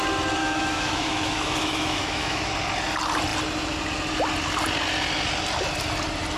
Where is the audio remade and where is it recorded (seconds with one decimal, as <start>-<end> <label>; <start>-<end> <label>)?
0.0-0.4 recorded; 0.4-2.5 remade; 2.5-6.4 recorded